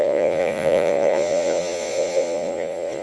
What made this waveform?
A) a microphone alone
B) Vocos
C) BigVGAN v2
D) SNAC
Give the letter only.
B